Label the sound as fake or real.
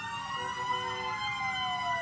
real